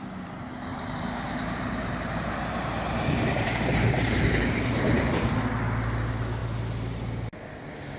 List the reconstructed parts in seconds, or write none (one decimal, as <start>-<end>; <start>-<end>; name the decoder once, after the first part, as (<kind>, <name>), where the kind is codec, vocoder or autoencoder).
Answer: 0.7-5.3 (vocoder, BigVGAN v2)